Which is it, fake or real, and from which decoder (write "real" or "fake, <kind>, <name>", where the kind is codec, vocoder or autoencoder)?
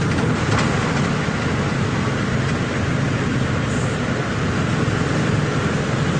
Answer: real